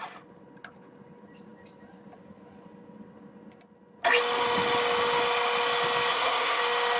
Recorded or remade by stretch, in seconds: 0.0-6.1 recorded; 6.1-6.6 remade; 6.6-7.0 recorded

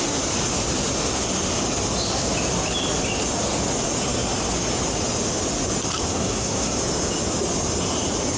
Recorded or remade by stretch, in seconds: 0.0-6.1 recorded; 6.1-6.8 remade; 6.8-8.4 recorded

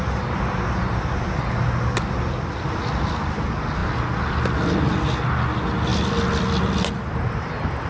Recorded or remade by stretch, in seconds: 0.0-7.9 recorded

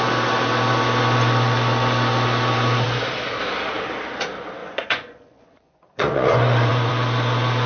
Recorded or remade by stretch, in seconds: 0.0-4.6 recorded; 4.6-6.9 remade; 6.9-7.7 recorded

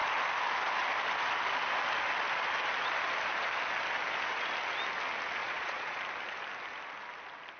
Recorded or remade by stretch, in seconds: 0.0-5.4 recorded; 5.4-6.0 remade; 6.0-7.6 recorded

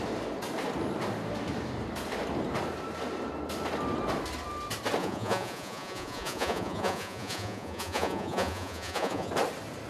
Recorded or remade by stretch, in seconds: 0.0-5.0 recorded; 5.0-9.3 remade; 9.3-9.9 recorded